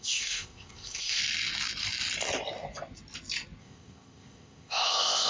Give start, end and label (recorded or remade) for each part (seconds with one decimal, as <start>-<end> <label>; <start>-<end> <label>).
0.0-1.2 remade; 1.2-3.6 recorded; 3.6-5.3 remade